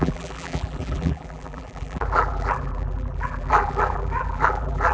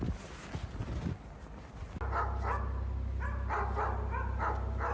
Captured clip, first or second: second